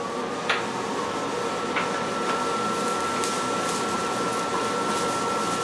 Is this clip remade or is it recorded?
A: recorded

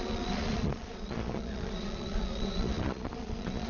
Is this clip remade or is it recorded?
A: remade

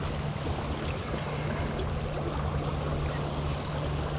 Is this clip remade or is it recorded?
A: recorded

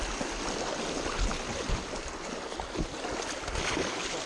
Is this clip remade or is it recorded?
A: recorded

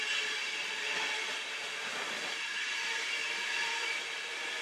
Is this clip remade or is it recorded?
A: remade